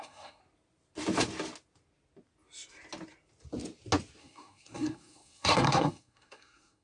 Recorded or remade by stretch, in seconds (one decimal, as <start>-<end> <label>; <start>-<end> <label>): 0.0-0.4 remade; 0.4-4.2 recorded; 4.2-6.8 remade